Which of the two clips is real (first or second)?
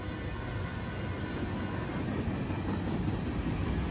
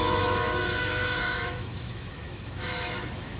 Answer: first